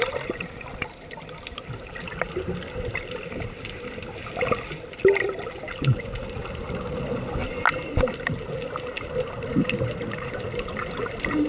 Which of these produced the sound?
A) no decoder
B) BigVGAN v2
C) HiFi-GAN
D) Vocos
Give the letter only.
B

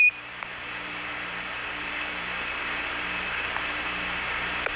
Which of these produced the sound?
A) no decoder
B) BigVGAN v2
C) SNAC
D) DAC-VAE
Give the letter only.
B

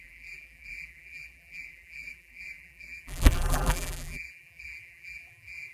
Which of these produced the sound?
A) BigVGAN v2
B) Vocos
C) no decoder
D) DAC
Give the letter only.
A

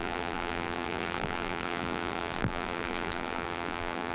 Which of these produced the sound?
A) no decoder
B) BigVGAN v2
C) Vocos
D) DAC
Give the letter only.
B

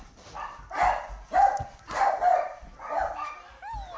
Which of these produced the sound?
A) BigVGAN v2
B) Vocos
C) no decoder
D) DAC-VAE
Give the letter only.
A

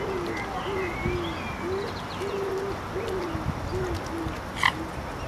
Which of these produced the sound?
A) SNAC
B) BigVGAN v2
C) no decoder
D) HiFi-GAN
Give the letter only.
C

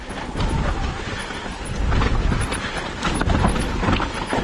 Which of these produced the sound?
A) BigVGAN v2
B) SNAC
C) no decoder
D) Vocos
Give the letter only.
C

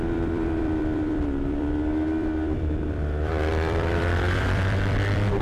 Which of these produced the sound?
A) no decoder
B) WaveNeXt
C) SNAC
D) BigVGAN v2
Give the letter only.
D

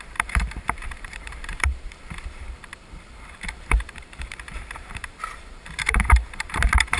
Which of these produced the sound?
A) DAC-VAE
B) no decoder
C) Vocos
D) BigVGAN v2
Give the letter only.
D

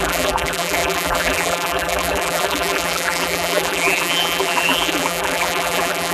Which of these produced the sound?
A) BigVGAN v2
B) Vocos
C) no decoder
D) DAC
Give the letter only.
A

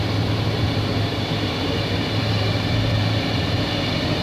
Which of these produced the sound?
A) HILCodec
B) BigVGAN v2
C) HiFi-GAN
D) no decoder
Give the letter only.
B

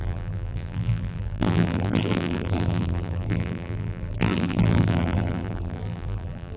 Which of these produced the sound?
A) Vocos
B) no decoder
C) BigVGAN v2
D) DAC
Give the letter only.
C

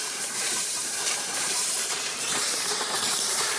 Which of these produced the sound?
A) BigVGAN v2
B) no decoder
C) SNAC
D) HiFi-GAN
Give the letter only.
A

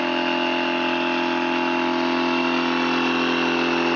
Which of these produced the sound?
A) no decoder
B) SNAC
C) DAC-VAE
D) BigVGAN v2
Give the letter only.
A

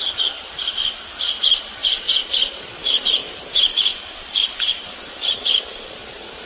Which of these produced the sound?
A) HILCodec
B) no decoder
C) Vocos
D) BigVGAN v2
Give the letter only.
D